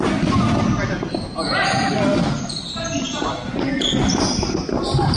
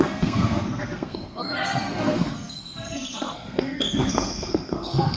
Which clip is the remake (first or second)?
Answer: second